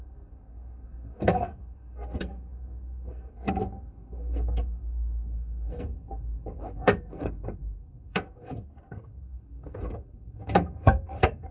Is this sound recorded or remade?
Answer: remade